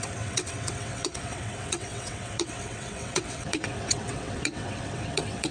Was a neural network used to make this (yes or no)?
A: yes